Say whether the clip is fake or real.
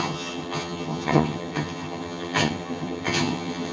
fake